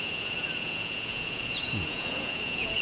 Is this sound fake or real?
fake